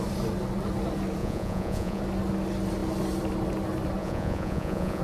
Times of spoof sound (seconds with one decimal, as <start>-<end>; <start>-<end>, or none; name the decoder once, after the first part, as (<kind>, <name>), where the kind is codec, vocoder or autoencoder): 1.2-2.0 (vocoder, Vocos); 4.0-5.0